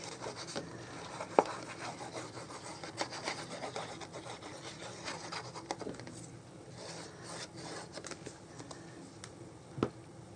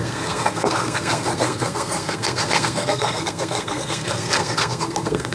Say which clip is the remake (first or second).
second